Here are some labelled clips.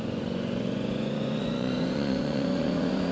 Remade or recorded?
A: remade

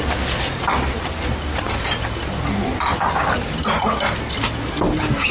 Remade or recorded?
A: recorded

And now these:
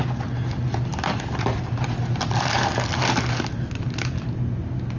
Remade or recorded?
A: recorded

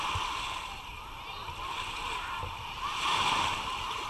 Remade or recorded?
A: recorded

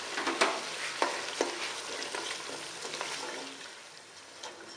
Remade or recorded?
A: recorded